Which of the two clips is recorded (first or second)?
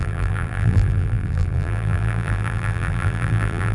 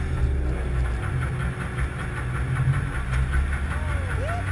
second